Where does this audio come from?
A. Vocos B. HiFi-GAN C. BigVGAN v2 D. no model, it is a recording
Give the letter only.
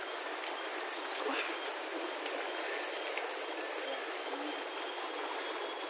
D